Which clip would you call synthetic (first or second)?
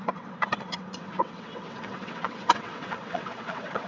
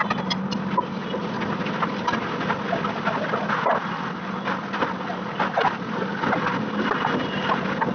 first